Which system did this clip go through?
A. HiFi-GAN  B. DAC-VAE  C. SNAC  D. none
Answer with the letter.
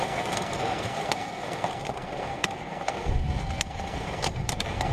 C